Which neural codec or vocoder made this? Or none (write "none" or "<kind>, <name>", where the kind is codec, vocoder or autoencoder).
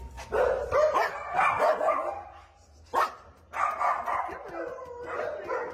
none